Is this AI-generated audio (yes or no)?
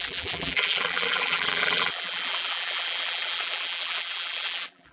yes